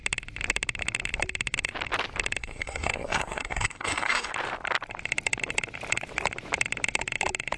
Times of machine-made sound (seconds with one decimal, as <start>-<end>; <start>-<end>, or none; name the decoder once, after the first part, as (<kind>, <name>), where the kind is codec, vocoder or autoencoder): 2.4-4.3 (codec, SNAC)